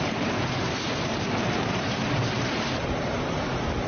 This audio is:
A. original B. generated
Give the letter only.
B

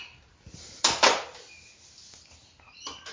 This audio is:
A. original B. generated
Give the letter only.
A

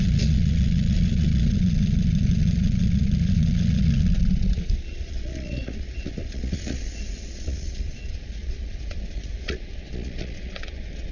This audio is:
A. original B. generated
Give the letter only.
B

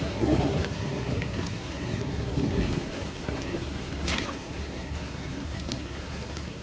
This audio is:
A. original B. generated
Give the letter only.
B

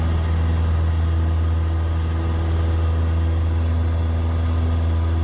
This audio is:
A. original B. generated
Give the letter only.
A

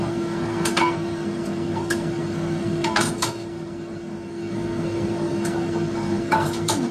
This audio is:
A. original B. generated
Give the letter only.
B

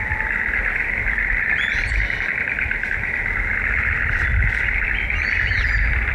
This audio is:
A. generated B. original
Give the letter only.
B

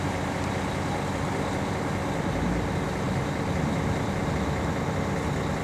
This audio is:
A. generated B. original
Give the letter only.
B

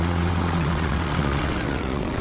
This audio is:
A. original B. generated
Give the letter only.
B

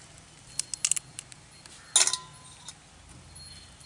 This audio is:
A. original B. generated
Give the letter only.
A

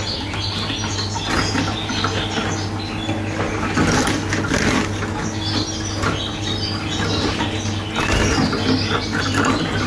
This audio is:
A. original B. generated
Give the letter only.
A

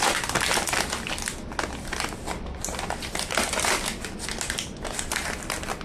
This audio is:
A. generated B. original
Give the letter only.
B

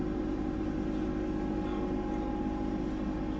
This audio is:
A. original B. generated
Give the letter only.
A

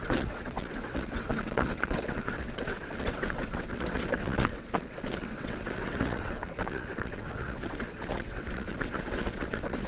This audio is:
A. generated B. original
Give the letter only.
A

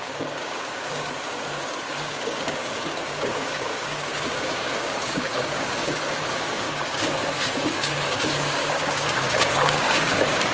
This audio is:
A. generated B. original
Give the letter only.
A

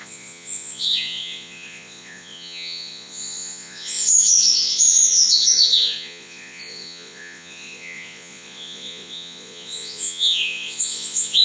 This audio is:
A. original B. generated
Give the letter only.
B